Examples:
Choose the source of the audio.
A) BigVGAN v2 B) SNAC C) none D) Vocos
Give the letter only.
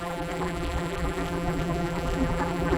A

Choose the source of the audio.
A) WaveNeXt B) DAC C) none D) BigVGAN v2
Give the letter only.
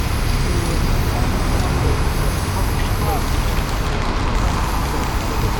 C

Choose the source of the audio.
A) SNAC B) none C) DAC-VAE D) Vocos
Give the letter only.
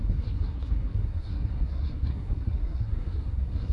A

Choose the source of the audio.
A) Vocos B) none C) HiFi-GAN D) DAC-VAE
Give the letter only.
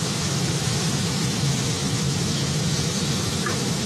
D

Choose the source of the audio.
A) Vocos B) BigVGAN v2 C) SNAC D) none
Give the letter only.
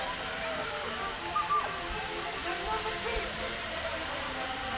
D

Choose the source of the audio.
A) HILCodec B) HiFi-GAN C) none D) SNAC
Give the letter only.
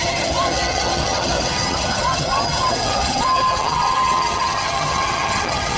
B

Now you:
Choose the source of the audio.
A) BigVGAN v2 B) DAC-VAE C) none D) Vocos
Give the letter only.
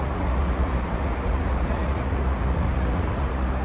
D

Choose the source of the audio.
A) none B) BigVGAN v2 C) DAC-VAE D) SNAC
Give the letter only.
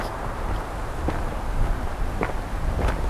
A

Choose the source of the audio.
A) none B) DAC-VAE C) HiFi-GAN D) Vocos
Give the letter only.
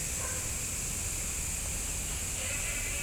A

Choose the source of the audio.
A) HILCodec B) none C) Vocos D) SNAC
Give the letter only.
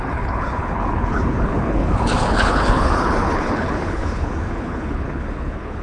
A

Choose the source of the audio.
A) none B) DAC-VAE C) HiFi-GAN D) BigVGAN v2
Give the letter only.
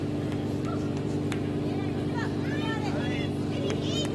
D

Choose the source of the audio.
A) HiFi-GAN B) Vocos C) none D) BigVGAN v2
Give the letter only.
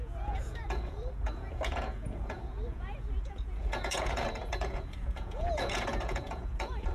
B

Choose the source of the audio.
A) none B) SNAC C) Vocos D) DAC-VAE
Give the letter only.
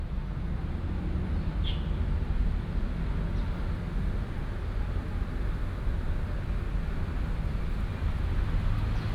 A